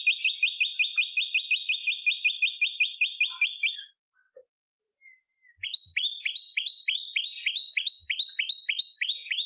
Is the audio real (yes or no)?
yes